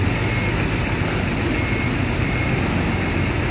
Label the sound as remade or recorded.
recorded